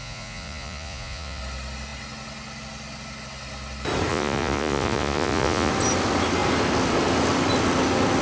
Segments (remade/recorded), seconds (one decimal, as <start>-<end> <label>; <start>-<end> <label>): 0.0-1.4 remade; 1.4-4.1 recorded; 4.1-5.7 remade; 5.7-8.2 recorded